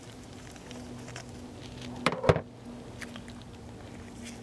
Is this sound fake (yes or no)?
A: no